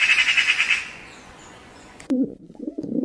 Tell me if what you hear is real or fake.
fake